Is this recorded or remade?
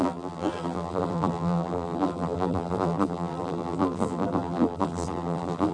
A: remade